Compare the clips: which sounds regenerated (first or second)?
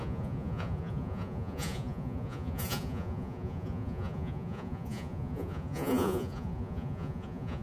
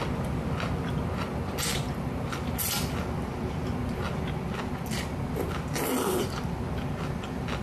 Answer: first